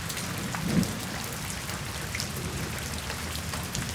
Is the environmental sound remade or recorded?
recorded